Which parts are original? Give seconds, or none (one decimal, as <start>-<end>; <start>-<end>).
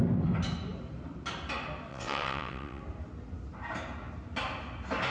0.0-1.9; 2.8-5.1